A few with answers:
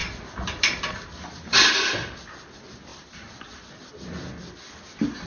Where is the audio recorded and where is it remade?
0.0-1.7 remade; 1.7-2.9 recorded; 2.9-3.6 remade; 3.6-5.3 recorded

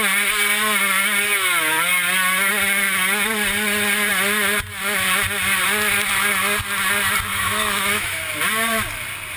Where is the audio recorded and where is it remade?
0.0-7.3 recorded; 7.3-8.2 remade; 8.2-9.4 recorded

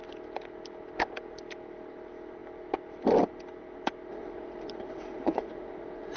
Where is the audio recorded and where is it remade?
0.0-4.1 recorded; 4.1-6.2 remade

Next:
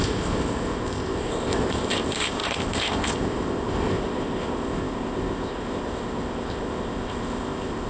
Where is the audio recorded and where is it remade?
0.0-7.9 remade

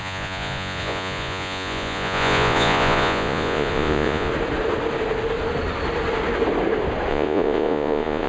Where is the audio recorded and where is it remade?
0.0-4.3 remade; 4.3-7.1 recorded; 7.1-8.3 remade